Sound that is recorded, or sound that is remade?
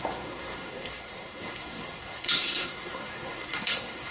remade